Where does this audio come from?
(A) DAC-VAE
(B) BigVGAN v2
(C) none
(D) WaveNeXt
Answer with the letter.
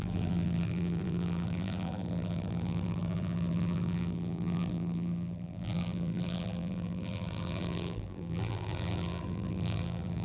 B